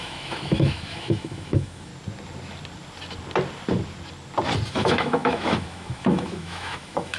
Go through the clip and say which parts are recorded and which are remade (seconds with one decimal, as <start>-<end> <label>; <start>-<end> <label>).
0.0-1.9 remade; 1.9-4.7 recorded; 4.7-7.2 remade